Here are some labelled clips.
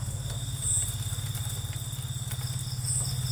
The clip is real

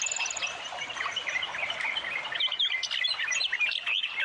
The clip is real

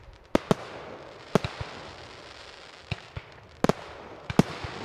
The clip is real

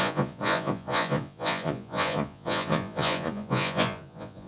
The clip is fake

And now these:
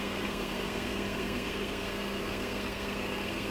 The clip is fake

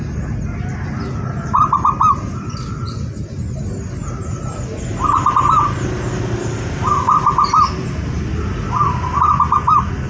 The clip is real